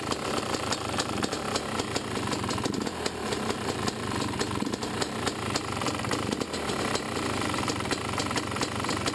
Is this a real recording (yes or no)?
yes